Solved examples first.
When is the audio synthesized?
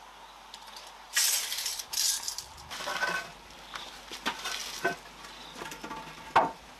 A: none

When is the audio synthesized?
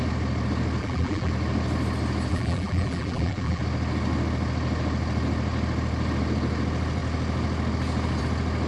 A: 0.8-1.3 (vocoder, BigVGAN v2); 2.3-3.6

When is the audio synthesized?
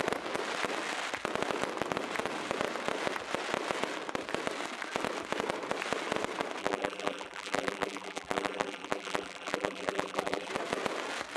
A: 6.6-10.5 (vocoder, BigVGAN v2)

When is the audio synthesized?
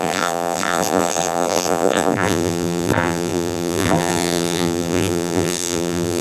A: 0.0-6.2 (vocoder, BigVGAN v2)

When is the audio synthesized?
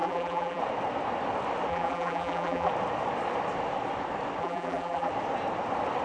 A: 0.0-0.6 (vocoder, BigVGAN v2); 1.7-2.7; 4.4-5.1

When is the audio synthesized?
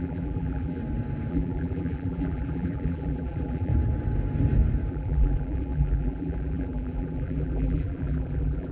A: 0.0-0.8 (vocoder, BigVGAN v2); 1.3-3.7; 4.9-8.7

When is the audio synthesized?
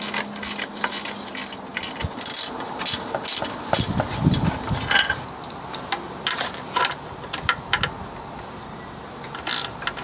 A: 1.7-6.9 (vocoder, BigVGAN v2)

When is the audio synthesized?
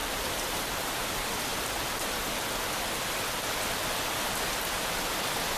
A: 0.0-0.9 (vocoder, BigVGAN v2)